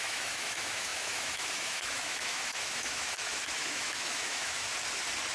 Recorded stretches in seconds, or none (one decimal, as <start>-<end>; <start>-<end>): 4.7-5.3